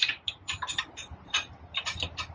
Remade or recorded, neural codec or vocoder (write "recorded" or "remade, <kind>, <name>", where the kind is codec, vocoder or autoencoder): recorded